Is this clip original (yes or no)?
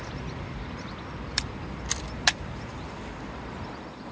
yes